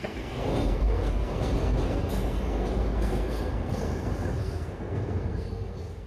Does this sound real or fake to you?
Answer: fake